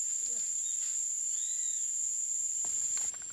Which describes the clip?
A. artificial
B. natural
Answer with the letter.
B